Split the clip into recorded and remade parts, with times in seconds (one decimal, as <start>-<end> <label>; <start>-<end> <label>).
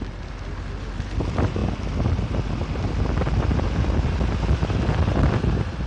0.0-5.9 recorded